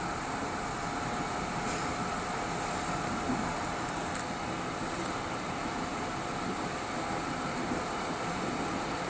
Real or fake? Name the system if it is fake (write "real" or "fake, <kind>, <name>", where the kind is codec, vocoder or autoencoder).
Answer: real